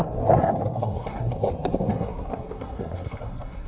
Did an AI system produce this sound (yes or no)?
yes